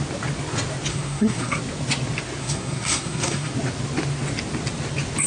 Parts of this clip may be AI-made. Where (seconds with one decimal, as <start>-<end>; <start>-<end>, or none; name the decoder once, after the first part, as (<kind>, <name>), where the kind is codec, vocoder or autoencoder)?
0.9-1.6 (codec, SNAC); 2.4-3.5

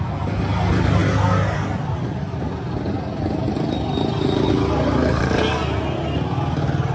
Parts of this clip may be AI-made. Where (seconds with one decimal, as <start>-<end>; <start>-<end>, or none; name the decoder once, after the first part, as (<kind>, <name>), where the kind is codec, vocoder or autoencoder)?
none

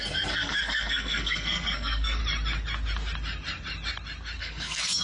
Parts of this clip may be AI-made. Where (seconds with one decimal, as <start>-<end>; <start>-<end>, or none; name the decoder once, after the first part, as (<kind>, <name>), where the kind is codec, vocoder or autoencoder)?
0.0-2.2 (codec, SNAC); 4.4-5.0